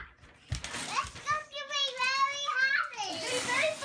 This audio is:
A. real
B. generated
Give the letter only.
A